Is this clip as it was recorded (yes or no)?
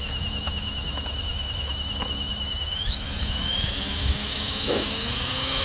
no